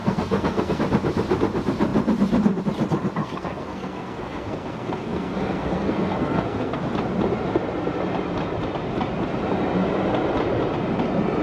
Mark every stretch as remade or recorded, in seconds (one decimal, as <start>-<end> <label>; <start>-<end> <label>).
0.0-0.8 remade; 0.8-3.2 recorded; 3.2-6.8 remade; 6.8-11.4 recorded